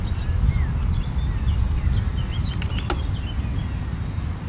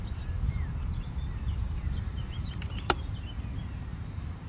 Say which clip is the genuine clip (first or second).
first